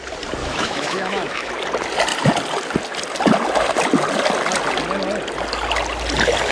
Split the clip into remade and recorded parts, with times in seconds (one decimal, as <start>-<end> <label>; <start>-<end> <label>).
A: 0.0-0.4 recorded; 0.4-1.5 remade; 1.5-6.5 recorded